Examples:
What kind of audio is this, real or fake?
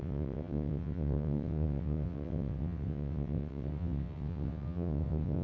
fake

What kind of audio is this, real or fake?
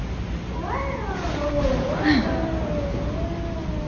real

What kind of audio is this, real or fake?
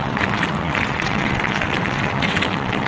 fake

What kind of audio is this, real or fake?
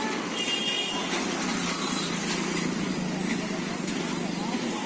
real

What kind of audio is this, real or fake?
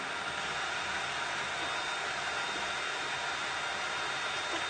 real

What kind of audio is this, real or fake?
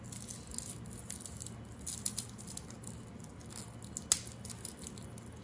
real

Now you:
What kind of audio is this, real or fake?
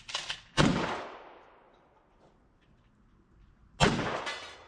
real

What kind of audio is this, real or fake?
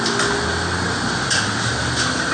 real